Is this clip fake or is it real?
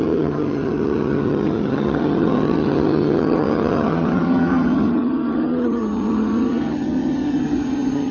fake